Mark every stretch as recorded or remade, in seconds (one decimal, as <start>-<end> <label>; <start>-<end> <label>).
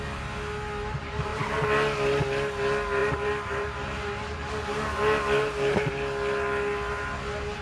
0.0-3.0 recorded; 3.0-5.9 remade; 5.9-7.6 recorded